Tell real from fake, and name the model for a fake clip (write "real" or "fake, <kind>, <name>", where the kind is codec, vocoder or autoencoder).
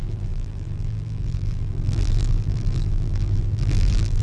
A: fake, vocoder, BigVGAN v2